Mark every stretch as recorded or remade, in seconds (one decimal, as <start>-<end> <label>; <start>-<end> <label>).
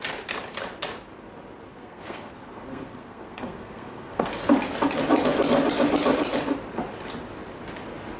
0.0-1.7 recorded; 1.7-4.3 remade; 4.3-8.2 recorded